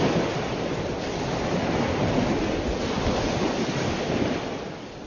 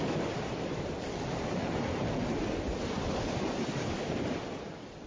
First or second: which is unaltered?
first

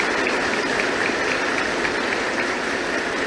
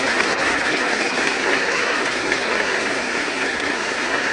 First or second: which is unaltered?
first